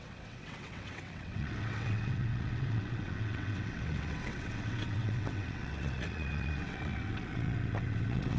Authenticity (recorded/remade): remade